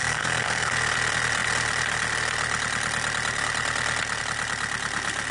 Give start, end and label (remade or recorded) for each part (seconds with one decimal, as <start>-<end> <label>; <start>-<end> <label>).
0.0-0.7 remade; 0.7-5.3 recorded